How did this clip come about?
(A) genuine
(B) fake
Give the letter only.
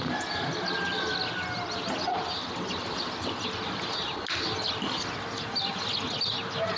A